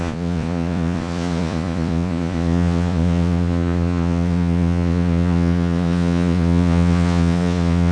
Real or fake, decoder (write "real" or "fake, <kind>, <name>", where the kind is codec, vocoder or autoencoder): fake, vocoder, Vocos